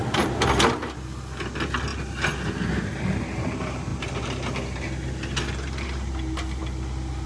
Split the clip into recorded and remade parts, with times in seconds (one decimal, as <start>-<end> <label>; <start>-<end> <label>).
0.0-7.3 recorded